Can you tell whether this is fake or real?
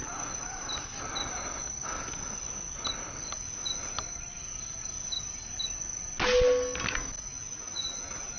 real